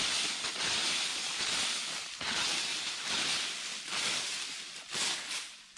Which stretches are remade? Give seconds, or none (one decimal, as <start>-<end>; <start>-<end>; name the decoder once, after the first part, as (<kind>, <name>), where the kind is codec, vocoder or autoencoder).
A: 1.1-1.6 (vocoder, BigVGAN v2); 2.7-3.2; 3.7-5.0